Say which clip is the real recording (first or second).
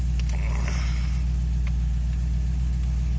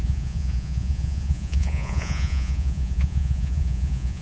first